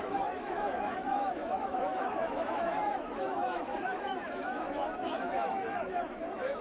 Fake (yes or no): yes